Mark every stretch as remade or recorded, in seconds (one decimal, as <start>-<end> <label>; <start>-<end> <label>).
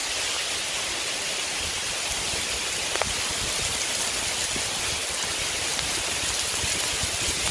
0.0-7.5 recorded